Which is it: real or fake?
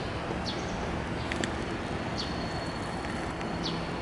real